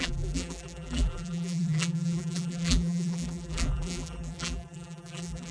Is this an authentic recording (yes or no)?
no